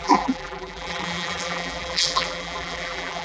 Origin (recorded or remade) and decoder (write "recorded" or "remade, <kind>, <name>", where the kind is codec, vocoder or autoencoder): remade, vocoder, BigVGAN v2